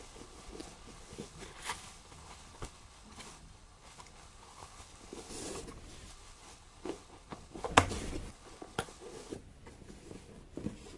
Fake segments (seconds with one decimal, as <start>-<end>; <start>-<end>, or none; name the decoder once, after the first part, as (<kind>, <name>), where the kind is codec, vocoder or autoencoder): 0.0-5.3 (codec, HILCodec); 6.1-7.7; 8.3-9.3